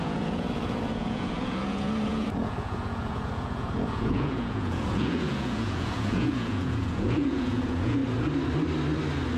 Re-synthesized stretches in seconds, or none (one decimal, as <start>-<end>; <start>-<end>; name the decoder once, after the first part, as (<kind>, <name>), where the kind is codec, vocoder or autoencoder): 0.0-8.0 (vocoder, Vocos)